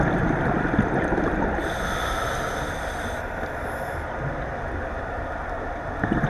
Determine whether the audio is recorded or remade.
remade